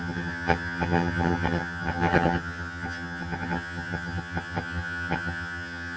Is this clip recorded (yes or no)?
no